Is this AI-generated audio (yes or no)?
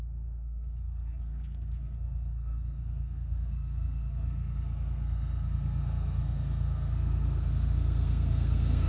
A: yes